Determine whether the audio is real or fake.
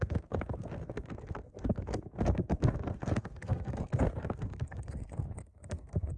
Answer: fake